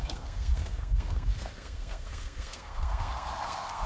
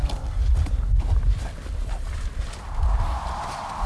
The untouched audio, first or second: second